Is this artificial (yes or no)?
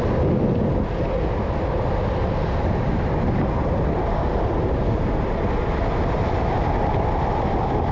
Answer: no